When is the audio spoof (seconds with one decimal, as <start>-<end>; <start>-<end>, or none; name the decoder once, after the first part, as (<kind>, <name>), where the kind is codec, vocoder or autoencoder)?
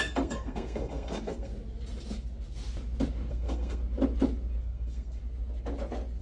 0.0-1.5 (codec, SNAC); 3.3-3.8; 4.6-5.2